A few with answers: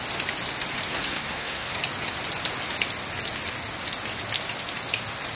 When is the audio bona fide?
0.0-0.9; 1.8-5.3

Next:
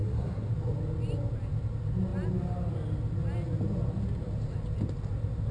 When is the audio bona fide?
0.5-5.5

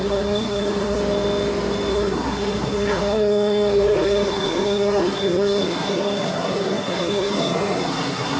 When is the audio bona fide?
1.0-1.9